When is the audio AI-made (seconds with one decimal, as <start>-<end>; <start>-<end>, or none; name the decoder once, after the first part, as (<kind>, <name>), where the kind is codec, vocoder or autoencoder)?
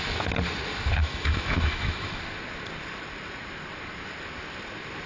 1.0-2.2 (autoencoder, DAC-VAE)